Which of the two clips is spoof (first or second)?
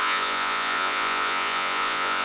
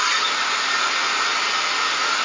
first